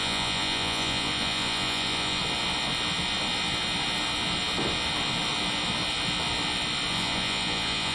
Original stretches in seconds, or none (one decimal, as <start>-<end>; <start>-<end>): 2.2-6.9